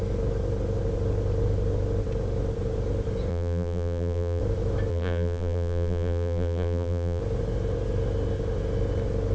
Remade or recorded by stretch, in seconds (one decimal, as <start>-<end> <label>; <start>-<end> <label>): 0.0-3.3 recorded; 3.3-4.4 remade; 4.4-4.9 recorded; 4.9-7.2 remade; 7.2-9.3 recorded

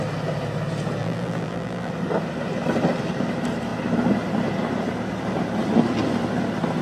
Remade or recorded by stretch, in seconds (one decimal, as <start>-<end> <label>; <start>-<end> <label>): 0.0-1.0 recorded; 1.0-1.9 remade; 1.9-6.8 recorded

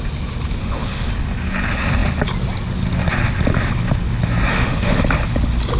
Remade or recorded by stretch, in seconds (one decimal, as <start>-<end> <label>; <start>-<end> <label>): 0.0-0.6 recorded; 0.6-1.1 remade; 1.1-4.5 recorded; 4.5-5.0 remade; 5.0-5.8 recorded

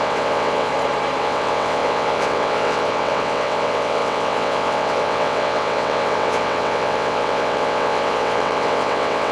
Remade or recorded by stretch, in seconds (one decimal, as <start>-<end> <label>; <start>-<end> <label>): 0.0-0.7 remade; 0.7-1.2 recorded; 1.2-9.3 remade

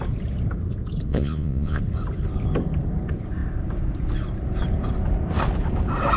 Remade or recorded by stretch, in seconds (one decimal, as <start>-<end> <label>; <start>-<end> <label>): 0.0-1.1 recorded; 1.1-1.8 remade; 1.8-6.2 recorded

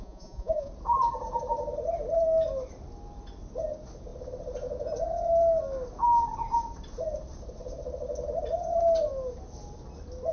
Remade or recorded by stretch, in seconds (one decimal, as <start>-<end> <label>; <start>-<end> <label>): 0.0-0.7 remade; 0.7-10.3 recorded

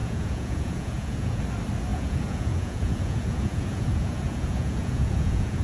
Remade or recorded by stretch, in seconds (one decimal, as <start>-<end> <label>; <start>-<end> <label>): 0.0-1.4 remade; 1.4-1.9 recorded; 1.9-5.6 remade

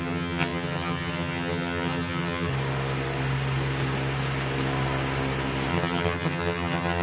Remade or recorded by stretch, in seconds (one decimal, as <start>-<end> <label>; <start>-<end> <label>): 0.0-2.5 remade; 2.5-5.7 recorded; 5.7-7.0 remade